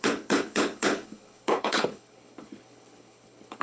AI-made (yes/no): yes